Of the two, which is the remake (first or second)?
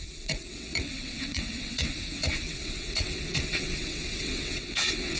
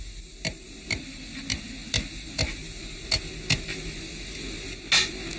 first